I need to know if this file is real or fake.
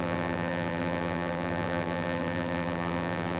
fake